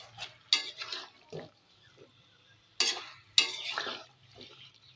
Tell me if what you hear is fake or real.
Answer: real